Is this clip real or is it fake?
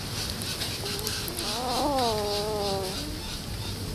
real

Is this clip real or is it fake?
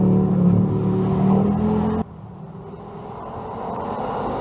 real